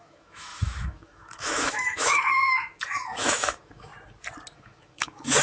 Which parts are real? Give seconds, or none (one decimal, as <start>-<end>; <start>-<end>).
3.9-4.5